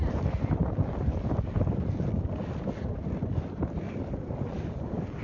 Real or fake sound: real